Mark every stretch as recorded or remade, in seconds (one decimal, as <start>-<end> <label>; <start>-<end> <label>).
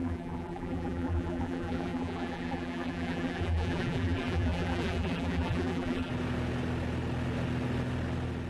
0.0-6.1 remade; 6.1-8.5 recorded